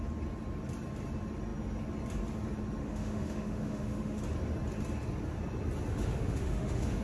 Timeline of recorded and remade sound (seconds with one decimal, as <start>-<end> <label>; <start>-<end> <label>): 0.0-2.8 recorded; 2.8-4.2 remade; 4.2-5.9 recorded; 5.9-7.0 remade